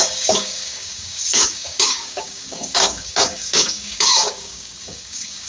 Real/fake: fake